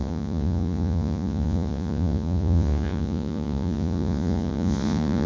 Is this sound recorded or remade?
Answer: remade